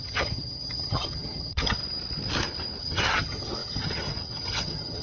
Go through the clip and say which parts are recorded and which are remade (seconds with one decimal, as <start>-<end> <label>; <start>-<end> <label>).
0.0-1.8 remade; 1.8-2.8 recorded; 2.8-5.0 remade